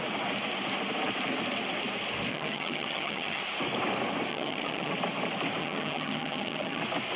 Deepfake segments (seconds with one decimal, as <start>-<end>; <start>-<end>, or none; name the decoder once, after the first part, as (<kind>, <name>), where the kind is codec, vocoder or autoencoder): 2.3-3.4 (vocoder, HiFi-GAN); 4.3-4.9; 5.6-6.8